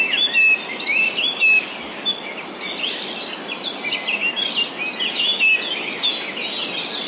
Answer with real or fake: real